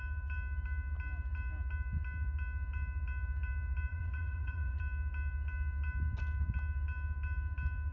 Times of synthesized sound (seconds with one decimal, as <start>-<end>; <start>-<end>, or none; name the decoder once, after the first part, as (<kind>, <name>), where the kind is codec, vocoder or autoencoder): 3.9-4.8 (vocoder, Vocos)